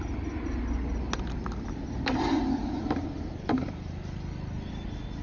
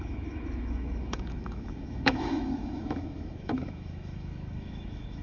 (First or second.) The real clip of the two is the first